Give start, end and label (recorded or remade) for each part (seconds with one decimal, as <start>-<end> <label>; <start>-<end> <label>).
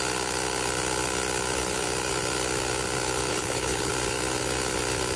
0.0-3.3 recorded; 3.3-3.9 remade; 3.9-5.2 recorded